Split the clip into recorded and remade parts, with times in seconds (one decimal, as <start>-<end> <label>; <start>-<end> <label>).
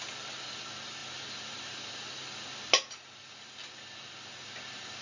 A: 0.0-5.0 recorded